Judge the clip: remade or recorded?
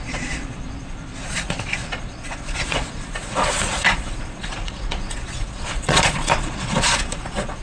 remade